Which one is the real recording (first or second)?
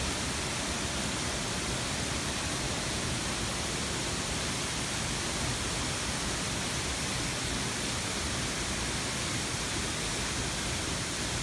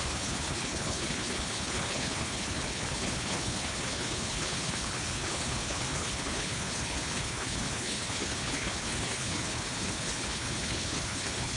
first